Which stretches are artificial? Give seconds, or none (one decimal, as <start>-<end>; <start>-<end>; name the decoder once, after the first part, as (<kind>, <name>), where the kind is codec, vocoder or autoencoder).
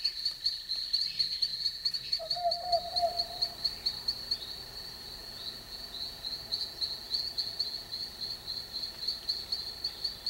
1.5-2.2 (vocoder, Vocos); 5.2-7.9